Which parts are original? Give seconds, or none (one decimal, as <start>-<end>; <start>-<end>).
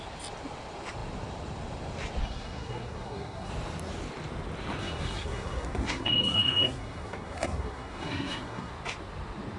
0.0-2.2; 3.5-4.8; 8.7-9.6